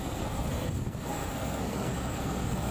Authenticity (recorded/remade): remade